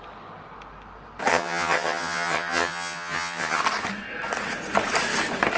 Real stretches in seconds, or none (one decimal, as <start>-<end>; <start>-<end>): 0.0-1.3; 3.6-5.6